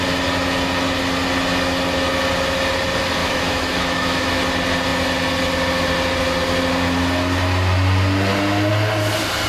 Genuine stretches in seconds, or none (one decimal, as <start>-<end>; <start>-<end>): 0.0-3.2; 4.4-9.5